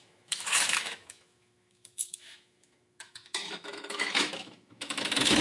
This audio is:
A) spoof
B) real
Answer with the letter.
A